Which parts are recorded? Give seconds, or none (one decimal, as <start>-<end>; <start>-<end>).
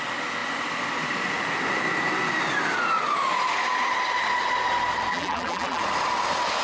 0.0-5.1; 5.8-6.6